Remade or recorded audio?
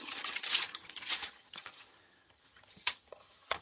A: remade